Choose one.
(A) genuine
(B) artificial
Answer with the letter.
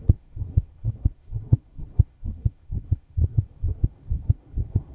B